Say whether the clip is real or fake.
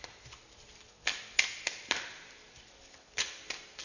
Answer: real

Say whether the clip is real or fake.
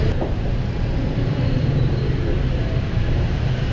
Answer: fake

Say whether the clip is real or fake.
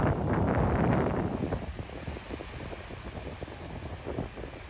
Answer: real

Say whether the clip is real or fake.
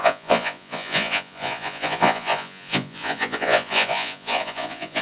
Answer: fake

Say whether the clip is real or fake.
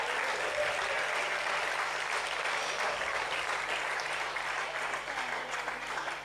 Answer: real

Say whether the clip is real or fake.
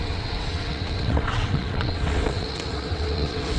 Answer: fake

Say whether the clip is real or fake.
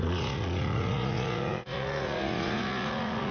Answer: fake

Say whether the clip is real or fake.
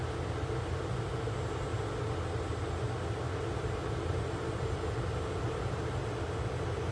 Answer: real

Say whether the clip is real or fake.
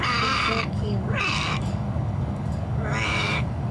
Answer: fake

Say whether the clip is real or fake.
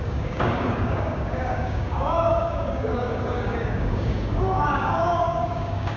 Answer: fake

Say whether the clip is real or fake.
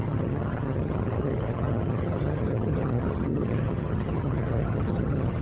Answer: fake